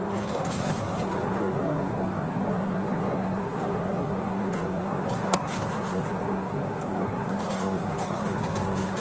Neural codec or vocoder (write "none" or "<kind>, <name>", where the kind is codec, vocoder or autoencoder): codec, SNAC